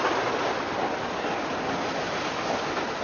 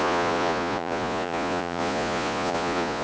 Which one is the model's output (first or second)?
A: second